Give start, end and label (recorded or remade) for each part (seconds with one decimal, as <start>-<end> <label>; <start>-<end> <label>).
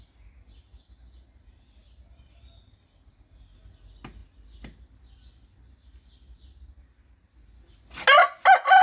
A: 0.0-8.8 recorded